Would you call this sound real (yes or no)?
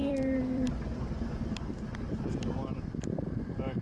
no